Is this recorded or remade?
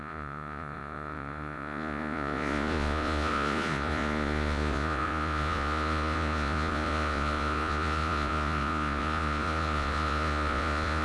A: remade